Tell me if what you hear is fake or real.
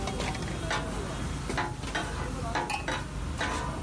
real